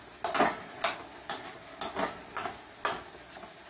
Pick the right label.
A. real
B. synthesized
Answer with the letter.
A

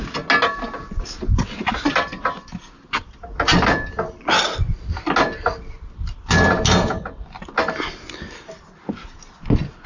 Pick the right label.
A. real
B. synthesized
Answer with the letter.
A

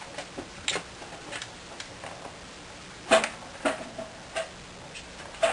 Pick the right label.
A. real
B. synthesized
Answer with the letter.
A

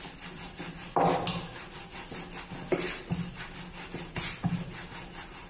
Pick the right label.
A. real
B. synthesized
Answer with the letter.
A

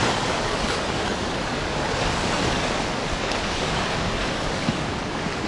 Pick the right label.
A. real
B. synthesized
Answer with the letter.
B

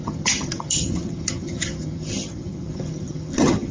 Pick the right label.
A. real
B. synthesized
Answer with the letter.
B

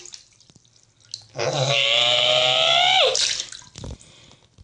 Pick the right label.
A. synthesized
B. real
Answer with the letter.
B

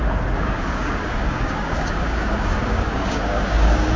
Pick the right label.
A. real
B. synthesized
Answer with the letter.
B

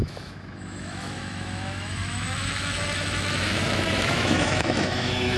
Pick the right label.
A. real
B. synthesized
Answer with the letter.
B